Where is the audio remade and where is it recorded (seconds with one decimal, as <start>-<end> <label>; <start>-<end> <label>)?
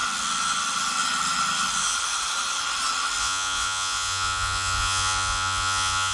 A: 0.0-3.2 recorded; 3.2-6.1 remade